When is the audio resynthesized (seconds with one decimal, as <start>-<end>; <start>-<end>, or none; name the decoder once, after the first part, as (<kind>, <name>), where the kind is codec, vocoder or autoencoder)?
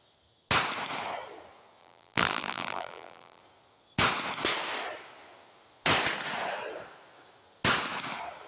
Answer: 1.8-3.4 (vocoder, BigVGAN v2)